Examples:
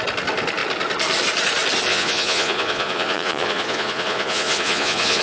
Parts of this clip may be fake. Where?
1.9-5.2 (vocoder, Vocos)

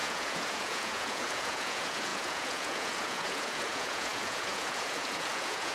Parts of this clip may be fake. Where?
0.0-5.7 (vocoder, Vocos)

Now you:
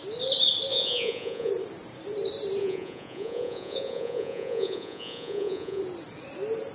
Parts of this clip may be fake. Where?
0.7-1.5 (vocoder, Vocos); 2.6-5.8

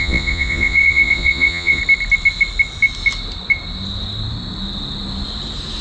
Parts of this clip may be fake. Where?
0.0-1.8 (vocoder, Vocos)